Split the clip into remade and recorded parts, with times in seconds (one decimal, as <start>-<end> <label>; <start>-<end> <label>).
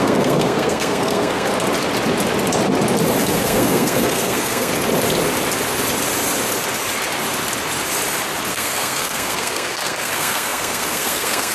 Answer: 0.0-1.5 remade; 1.5-3.2 recorded; 3.2-4.7 remade; 4.7-8.5 recorded; 8.5-11.5 remade